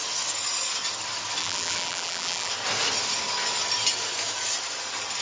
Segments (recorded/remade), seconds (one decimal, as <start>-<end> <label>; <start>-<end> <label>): 0.0-1.4 recorded; 1.4-2.5 remade; 2.5-5.2 recorded